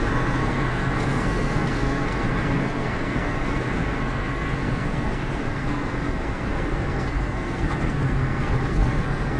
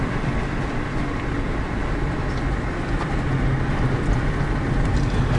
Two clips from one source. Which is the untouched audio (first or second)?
second